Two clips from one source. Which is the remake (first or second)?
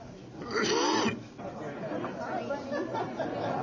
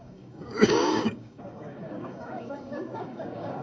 second